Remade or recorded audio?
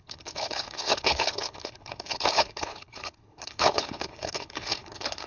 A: remade